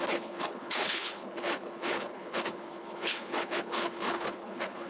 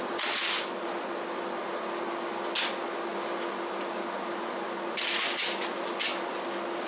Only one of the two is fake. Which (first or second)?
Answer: first